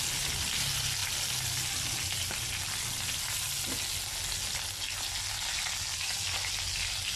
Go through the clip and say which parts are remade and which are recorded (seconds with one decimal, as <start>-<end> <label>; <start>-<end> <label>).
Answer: 0.0-7.2 recorded

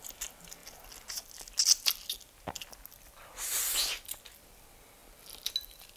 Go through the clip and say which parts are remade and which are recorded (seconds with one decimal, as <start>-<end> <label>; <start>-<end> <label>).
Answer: 0.0-6.0 recorded